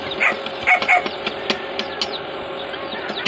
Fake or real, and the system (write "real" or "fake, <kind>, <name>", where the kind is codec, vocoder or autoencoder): real